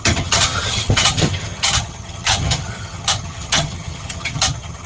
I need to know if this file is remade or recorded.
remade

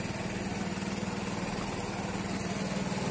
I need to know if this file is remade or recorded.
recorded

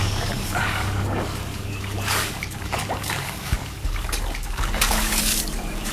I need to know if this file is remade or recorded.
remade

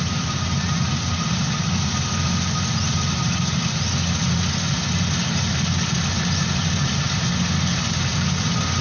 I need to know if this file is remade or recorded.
recorded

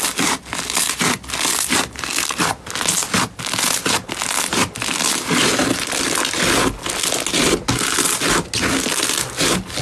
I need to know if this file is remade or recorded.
recorded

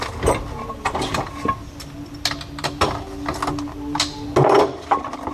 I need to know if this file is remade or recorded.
recorded